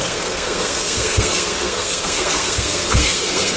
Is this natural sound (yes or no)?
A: no